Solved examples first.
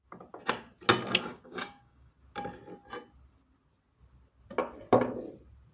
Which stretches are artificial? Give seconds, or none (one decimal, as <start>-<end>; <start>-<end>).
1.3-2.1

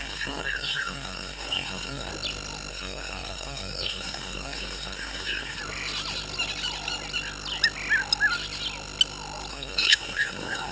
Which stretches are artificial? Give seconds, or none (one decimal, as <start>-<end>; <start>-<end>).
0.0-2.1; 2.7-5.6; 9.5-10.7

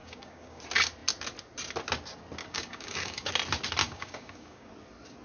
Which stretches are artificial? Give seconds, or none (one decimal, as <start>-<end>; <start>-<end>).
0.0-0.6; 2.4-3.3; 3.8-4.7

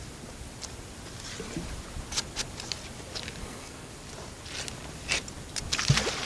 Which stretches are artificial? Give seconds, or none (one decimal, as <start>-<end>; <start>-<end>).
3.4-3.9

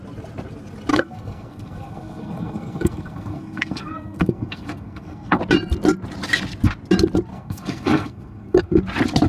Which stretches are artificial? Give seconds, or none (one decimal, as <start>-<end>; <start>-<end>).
0.9-5.4; 7.3-8.8

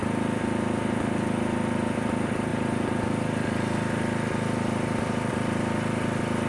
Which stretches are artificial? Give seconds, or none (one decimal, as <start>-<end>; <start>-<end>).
none

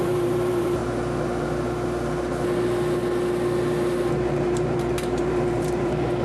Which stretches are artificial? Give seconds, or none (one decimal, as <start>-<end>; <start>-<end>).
0.0-0.8; 4.1-6.2